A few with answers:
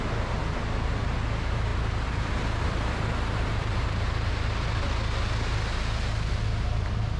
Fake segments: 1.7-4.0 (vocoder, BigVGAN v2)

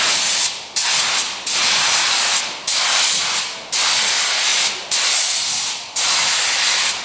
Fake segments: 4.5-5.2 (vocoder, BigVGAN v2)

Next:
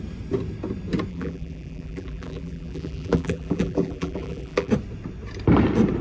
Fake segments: 1.1-4.7 (vocoder, BigVGAN v2)

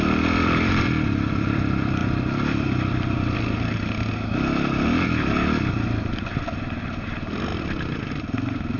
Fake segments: 0.0-2.0 (vocoder, BigVGAN v2); 6.8-7.5; 8.1-8.8

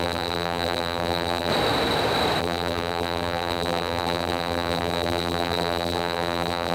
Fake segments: 0.0-1.5 (vocoder, BigVGAN v2); 2.4-6.7

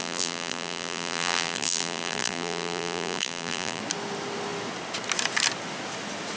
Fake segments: 0.0-3.8 (vocoder, BigVGAN v2)